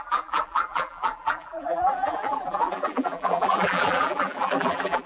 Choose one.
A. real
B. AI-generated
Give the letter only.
B